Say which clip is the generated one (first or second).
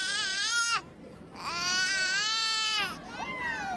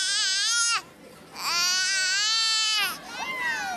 first